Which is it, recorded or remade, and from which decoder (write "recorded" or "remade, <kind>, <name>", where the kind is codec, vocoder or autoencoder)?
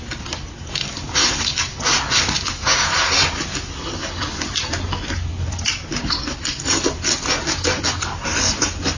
recorded